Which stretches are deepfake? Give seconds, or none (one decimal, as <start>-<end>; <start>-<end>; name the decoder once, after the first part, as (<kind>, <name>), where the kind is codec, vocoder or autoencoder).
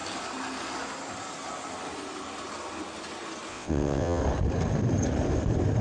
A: 3.5-4.2 (vocoder, WaveNeXt)